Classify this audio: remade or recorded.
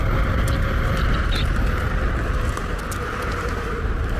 recorded